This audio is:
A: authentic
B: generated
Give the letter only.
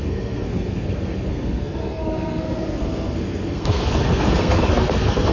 B